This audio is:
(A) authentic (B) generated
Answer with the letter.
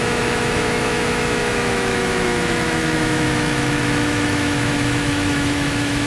B